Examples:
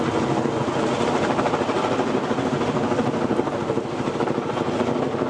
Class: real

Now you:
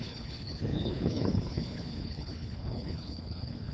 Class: fake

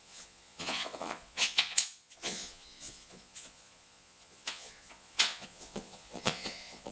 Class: fake